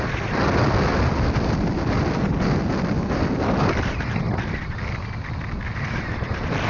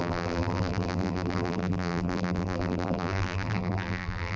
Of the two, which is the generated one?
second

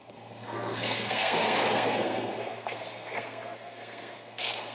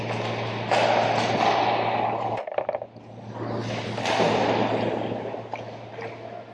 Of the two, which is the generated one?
first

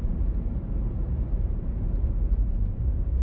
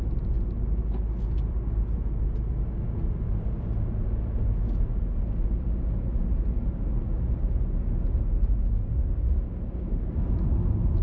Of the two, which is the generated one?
first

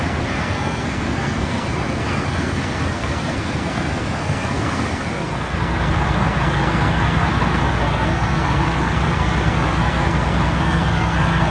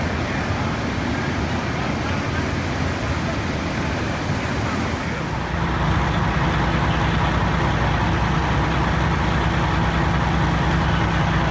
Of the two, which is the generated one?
first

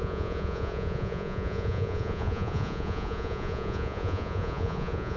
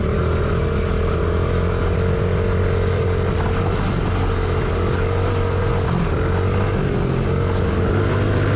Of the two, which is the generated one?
first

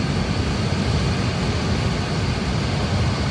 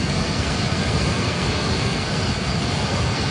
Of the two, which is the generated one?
second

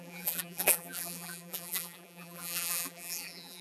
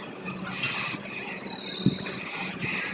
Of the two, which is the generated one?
first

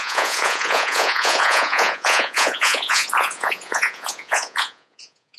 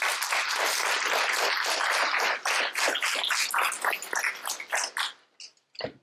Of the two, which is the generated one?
first